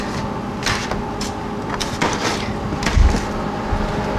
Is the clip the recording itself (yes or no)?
yes